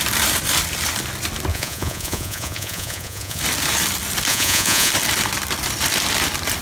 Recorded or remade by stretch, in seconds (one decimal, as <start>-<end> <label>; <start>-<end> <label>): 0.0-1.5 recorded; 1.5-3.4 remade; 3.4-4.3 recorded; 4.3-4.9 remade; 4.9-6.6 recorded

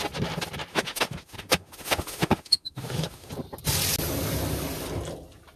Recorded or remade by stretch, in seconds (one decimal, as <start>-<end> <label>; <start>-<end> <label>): 0.0-0.7 recorded; 0.7-3.3 remade; 3.3-5.6 recorded

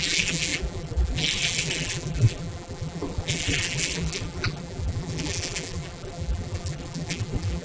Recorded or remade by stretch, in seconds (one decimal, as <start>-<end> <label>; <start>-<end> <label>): 0.0-7.6 remade